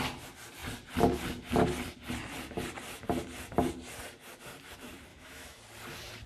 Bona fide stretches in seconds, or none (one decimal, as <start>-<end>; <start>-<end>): 0.0-5.1; 5.6-6.3